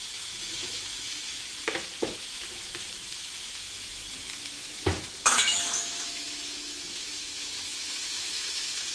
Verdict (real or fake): fake